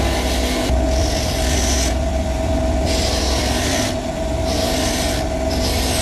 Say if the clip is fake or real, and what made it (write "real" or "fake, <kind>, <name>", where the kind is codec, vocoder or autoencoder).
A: real